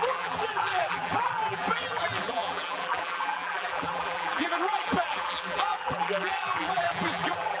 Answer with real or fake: fake